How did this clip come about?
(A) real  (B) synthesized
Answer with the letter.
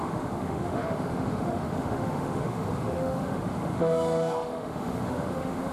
B